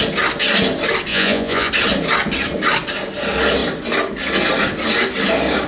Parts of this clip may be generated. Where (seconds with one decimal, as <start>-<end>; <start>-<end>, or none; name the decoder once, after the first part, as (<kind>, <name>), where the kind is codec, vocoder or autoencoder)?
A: 1.1-1.7 (vocoder, Vocos)